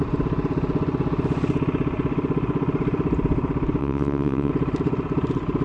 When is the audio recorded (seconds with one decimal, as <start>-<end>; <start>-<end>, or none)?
0.0-3.8; 4.5-5.6